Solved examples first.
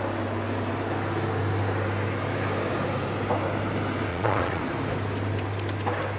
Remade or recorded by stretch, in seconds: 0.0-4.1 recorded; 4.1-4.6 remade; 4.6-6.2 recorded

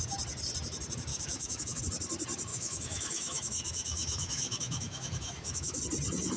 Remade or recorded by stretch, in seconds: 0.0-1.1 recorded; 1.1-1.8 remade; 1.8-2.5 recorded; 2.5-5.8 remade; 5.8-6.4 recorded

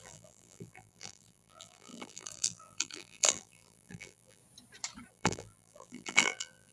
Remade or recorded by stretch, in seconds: 0.0-4.4 remade; 4.4-5.1 recorded; 5.1-6.7 remade

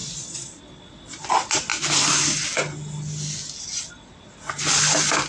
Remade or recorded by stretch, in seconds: 0.0-0.6 remade; 0.6-5.3 recorded

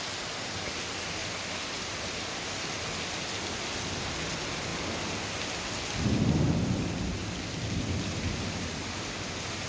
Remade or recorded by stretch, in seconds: 0.0-1.2 recorded; 1.2-3.1 remade; 3.1-9.7 recorded

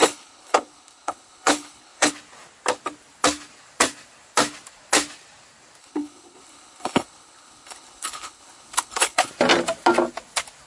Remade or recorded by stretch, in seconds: 0.0-2.1 remade; 2.1-5.8 recorded; 5.8-9.3 remade; 9.3-10.7 recorded